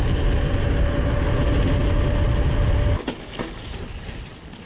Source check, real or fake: real